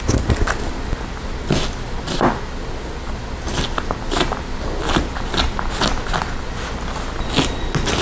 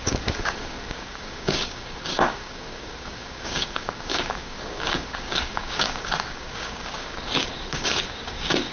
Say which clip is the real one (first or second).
first